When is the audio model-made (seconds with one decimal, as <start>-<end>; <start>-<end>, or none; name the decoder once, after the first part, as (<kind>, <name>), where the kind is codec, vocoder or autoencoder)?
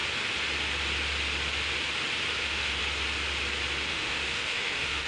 2.4-2.8 (autoencoder, DAC-VAE); 3.9-5.1